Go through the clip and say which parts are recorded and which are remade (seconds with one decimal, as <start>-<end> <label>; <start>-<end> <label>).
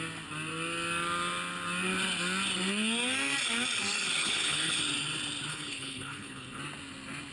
0.0-4.2 recorded; 4.2-4.8 remade; 4.8-5.5 recorded; 5.5-6.6 remade; 6.6-7.3 recorded